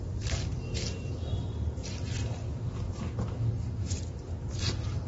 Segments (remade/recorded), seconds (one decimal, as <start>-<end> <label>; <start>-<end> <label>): 0.0-0.5 remade; 0.5-1.2 recorded; 1.2-2.4 remade; 2.4-3.8 recorded; 3.8-5.1 remade